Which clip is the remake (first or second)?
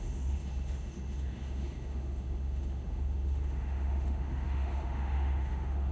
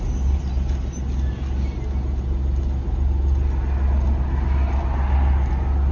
first